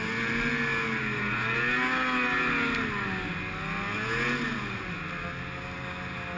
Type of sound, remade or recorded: recorded